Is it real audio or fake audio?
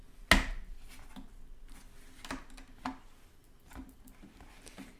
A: real